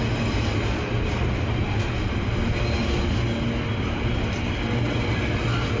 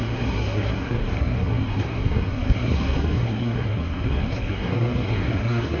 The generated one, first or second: second